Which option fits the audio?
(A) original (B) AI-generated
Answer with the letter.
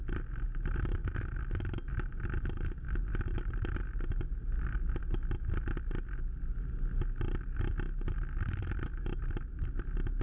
A